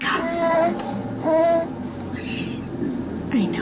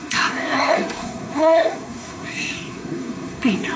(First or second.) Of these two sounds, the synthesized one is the second